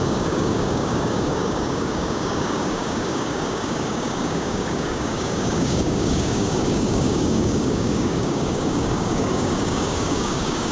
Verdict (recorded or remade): remade